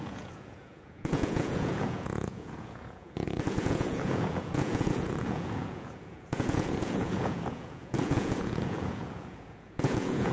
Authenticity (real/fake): fake